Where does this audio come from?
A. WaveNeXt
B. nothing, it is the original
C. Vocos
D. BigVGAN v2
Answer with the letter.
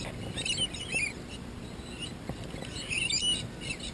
B